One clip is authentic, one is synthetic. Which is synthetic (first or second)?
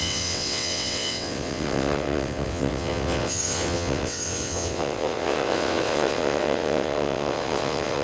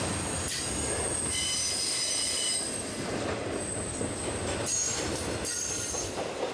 first